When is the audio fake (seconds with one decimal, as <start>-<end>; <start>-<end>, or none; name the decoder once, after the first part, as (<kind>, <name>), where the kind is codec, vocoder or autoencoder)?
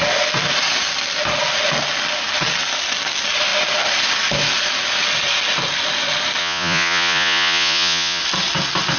6.4-8.2 (vocoder, Vocos)